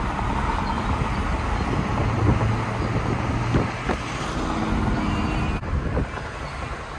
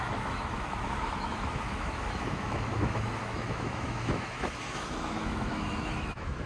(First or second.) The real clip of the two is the first